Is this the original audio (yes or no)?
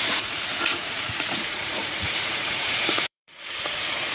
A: no